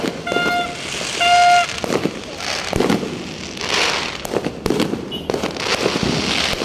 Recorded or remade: recorded